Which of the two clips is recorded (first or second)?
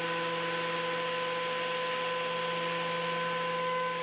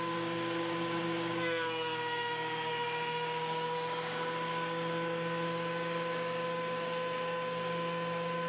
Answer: first